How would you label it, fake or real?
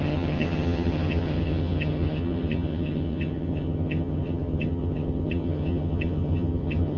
fake